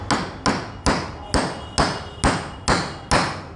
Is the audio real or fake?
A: real